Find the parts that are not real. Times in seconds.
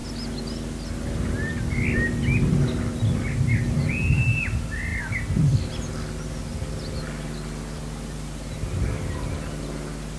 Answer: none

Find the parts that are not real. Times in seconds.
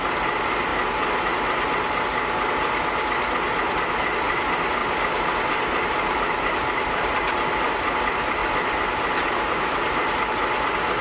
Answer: 4.8-8.0 (vocoder, BigVGAN v2); 8.4-10.3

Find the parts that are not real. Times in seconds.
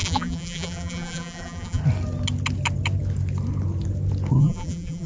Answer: 0.0-1.8 (vocoder, BigVGAN v2); 4.4-5.1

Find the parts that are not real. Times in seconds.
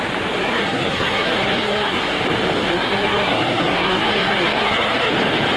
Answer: 0.4-2.0 (codec, SNAC); 2.6-5.1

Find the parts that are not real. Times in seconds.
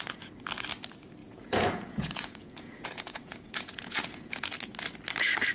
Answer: 1.2-4.5 (vocoder, Vocos)